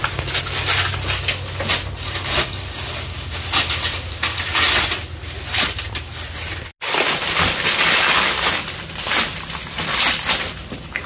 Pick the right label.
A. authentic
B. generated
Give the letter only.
A